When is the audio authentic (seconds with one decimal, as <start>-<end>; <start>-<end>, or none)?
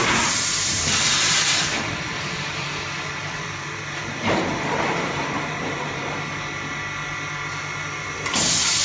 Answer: 6.0-7.6